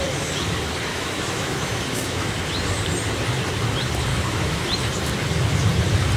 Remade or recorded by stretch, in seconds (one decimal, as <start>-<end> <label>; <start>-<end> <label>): 0.0-0.9 recorded; 0.9-2.3 remade; 2.3-4.1 recorded; 4.1-4.6 remade; 4.6-6.2 recorded